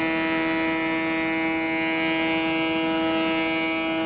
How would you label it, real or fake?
real